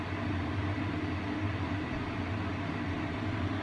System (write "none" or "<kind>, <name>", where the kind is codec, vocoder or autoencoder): none